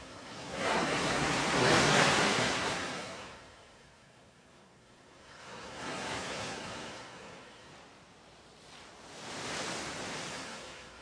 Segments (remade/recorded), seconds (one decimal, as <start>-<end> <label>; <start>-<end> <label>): 0.0-7.7 remade; 7.7-10.3 recorded; 10.3-11.0 remade